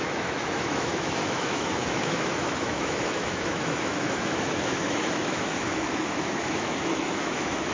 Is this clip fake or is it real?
fake